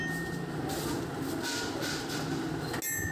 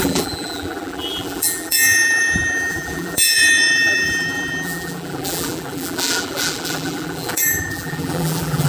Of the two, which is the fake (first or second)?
second